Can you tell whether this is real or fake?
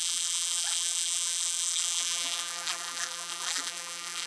fake